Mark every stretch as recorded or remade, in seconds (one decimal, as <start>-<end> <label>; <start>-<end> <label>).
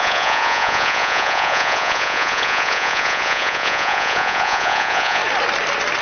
0.0-5.2 remade; 5.2-6.0 recorded